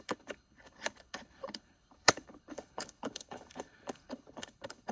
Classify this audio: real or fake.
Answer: fake